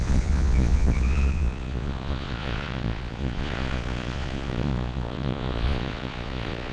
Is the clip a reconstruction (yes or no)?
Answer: yes